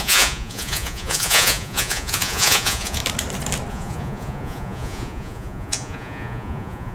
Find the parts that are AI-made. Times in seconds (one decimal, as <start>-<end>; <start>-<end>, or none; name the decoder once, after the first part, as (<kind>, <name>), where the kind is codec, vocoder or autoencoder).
0.0-3.0 (vocoder, Vocos); 3.7-6.9